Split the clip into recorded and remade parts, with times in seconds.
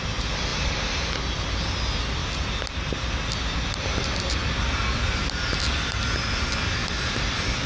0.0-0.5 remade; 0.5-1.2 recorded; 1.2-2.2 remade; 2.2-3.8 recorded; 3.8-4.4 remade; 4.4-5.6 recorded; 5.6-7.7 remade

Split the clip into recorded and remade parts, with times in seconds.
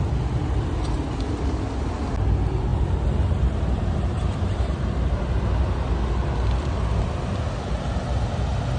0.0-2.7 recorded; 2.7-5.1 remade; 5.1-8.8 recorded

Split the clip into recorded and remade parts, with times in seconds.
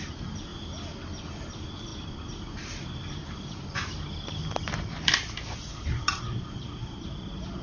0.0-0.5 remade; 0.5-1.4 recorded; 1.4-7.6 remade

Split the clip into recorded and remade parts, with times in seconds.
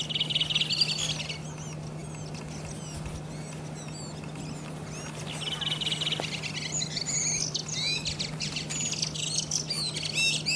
0.0-10.6 recorded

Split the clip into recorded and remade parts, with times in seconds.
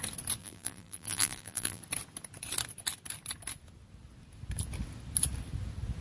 0.0-0.4 recorded; 0.4-1.8 remade; 1.8-6.0 recorded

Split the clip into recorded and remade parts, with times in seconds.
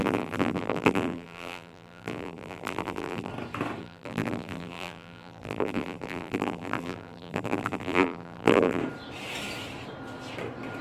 0.0-3.3 remade; 3.3-3.8 recorded; 3.8-8.8 remade; 8.8-10.8 recorded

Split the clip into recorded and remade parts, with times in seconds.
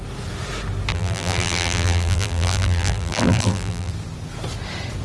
0.0-0.9 recorded; 0.9-3.9 remade; 3.9-5.0 recorded